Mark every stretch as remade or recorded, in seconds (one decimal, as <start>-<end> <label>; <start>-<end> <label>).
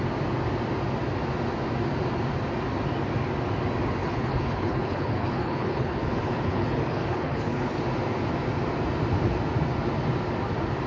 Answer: 0.0-4.0 recorded; 4.0-7.8 remade; 7.8-10.9 recorded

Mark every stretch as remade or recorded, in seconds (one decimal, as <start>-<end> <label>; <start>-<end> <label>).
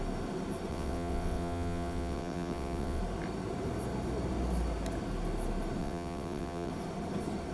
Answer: 0.0-0.7 recorded; 0.7-3.0 remade; 3.0-5.8 recorded; 5.8-6.7 remade; 6.7-7.5 recorded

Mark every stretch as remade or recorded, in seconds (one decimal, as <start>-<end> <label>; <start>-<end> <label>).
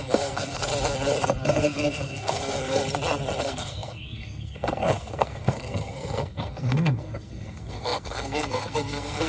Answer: 0.0-0.7 remade; 0.7-1.5 recorded; 1.5-2.8 remade; 2.8-3.4 recorded; 3.4-9.3 remade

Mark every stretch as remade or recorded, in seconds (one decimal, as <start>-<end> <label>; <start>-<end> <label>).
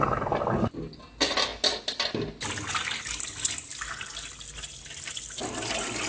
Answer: 0.0-6.1 recorded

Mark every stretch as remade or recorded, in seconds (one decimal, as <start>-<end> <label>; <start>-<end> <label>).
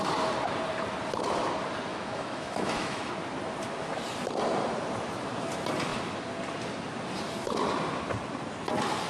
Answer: 0.0-1.9 recorded; 1.9-3.1 remade; 3.1-9.1 recorded